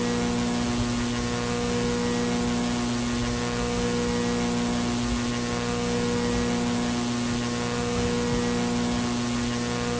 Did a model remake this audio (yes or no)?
no